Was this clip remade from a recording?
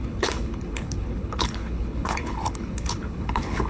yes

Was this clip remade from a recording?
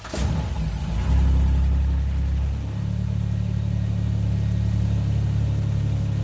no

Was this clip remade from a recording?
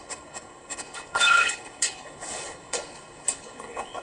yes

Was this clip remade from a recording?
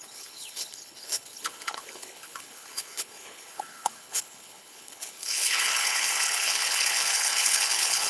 yes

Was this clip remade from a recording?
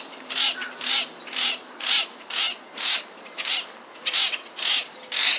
no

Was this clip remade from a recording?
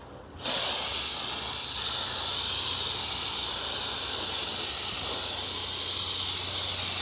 no